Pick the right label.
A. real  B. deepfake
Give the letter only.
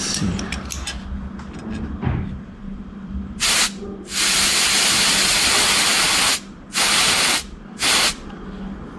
A